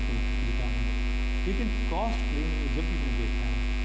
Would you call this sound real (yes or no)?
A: yes